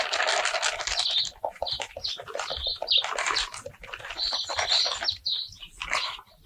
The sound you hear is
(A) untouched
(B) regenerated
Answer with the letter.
A